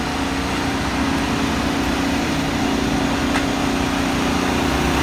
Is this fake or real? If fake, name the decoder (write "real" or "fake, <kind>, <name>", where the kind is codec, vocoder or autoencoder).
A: real